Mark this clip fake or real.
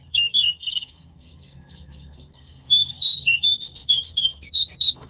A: fake